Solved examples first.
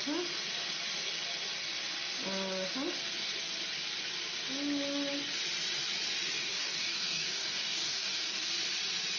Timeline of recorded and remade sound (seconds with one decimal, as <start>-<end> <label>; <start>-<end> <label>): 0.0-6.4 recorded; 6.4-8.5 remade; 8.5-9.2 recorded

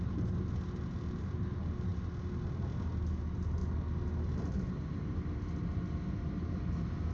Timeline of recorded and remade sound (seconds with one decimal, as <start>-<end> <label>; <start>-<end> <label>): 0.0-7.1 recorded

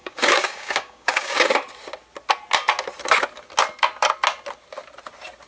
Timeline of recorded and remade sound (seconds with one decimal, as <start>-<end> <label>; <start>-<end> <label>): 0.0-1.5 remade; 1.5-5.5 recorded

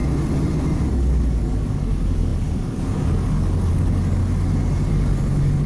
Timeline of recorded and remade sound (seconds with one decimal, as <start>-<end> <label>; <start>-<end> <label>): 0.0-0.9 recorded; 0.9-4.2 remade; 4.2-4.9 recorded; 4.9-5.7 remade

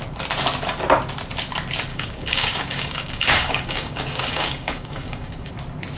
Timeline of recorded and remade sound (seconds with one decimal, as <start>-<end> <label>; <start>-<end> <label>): 0.0-1.9 recorded; 1.9-5.5 remade; 5.5-6.0 recorded

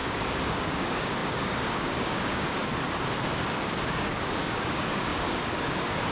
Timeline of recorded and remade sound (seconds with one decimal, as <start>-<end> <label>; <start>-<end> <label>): 0.0-2.6 remade; 2.6-3.7 recorded; 3.7-6.1 remade

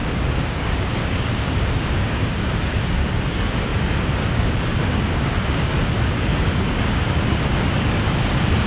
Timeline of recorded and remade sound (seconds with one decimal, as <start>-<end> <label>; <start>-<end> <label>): 0.0-5.7 remade; 5.7-6.2 recorded; 6.2-8.7 remade